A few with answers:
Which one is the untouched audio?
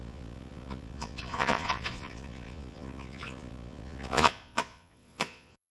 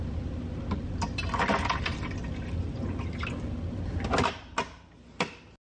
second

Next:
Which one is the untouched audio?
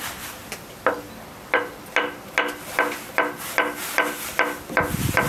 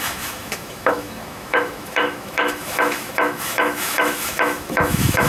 first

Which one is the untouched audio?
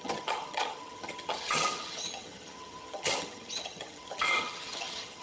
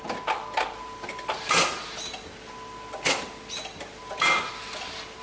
second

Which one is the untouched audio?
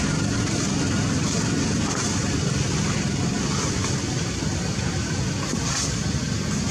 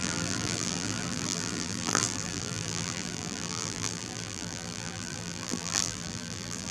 first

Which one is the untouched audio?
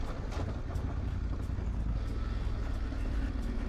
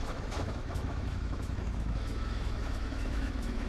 first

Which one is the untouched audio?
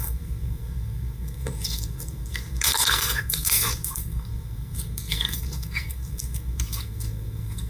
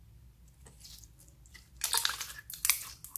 second